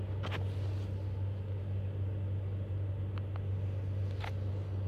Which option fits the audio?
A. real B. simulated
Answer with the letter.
A